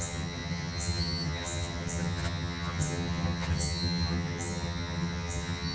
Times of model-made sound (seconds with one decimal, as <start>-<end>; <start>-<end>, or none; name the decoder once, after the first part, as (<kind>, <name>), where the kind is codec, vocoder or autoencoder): 0.0-5.7 (vocoder, HiFi-GAN)